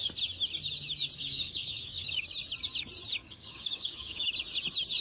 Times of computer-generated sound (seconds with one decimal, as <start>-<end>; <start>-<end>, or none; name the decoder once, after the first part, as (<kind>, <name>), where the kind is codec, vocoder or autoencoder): 1.2-2.2 (codec, DAC); 3.2-4.3